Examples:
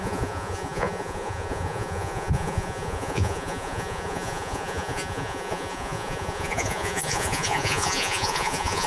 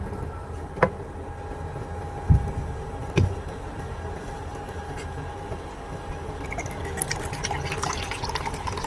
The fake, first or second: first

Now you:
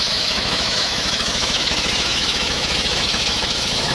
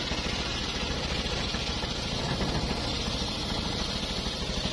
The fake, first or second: first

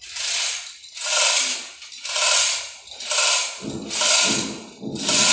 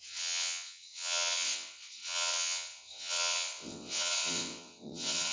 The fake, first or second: second